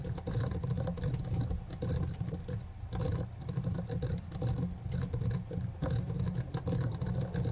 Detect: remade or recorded recorded